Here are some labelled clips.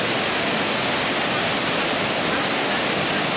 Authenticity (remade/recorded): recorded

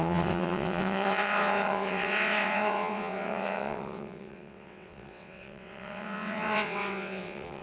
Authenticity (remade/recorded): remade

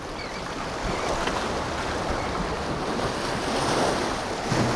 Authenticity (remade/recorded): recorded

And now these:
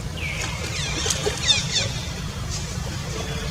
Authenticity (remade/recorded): recorded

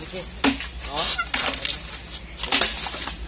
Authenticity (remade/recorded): recorded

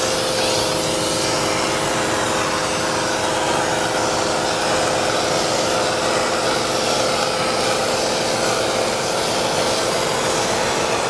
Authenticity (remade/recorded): recorded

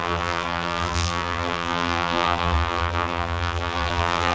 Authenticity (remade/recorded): remade